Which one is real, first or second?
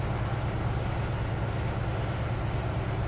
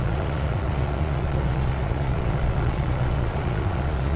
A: first